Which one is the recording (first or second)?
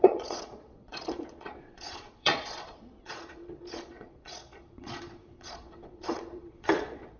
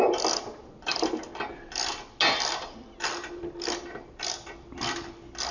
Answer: second